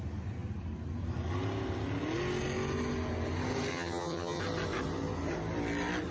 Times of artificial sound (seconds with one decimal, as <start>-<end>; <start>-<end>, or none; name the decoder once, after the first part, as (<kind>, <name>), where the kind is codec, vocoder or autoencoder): 3.7-4.4 (vocoder, HiFi-GAN)